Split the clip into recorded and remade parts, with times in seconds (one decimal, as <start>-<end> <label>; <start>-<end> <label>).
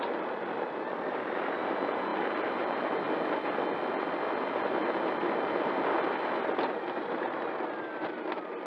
0.0-8.7 recorded